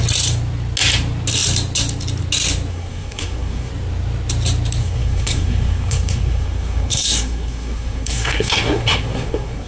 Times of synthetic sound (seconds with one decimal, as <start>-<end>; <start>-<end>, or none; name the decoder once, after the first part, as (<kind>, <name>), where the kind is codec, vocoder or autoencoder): 2.7-3.7 (codec, SNAC); 4.8-9.7